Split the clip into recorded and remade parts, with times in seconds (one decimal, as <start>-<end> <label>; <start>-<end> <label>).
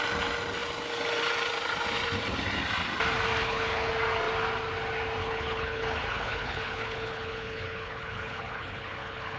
0.0-3.4 recorded; 3.4-3.9 remade; 3.9-5.2 recorded; 5.2-9.4 remade